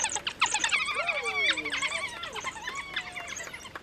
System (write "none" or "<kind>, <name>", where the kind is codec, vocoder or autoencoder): none